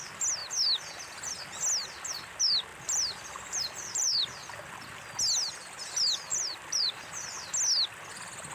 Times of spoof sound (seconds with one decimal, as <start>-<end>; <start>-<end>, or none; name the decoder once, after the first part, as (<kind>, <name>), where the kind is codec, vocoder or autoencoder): 2.7-5.0 (vocoder, BigVGAN v2); 6.3-7.1

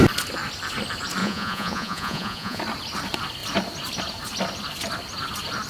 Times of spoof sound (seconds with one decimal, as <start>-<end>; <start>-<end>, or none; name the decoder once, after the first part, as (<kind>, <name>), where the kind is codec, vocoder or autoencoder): 1.2-2.6 (vocoder, Vocos)

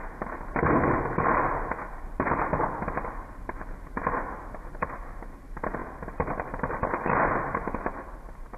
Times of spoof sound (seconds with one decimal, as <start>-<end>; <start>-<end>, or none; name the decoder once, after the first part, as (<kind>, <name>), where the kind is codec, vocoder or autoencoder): 5.8-6.5 (vocoder, BigVGAN v2)

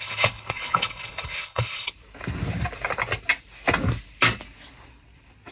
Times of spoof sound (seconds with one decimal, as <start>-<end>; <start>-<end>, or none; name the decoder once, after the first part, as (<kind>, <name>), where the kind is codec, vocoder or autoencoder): 0.0-1.9 (codec, HILCodec)